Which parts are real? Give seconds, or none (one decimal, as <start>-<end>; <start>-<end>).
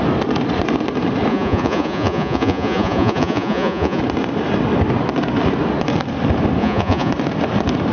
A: 0.0-1.3; 4.0-6.6; 7.1-7.9